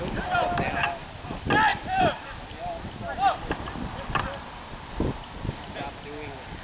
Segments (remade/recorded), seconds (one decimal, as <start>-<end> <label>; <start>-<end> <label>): 0.0-6.6 recorded